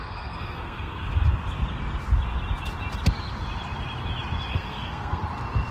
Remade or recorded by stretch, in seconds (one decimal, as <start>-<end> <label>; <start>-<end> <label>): 0.0-1.1 remade; 1.1-4.5 recorded; 4.5-5.2 remade; 5.2-5.7 recorded